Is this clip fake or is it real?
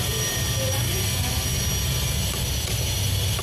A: real